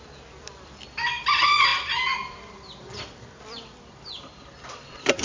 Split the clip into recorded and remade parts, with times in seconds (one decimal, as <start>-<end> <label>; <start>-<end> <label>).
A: 0.0-5.2 recorded